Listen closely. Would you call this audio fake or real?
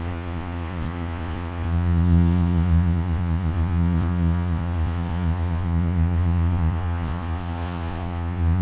fake